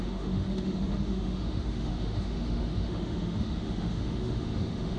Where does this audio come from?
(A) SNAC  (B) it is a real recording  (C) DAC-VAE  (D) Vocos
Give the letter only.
C